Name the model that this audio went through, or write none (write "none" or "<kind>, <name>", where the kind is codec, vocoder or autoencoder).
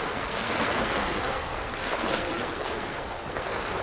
codec, SNAC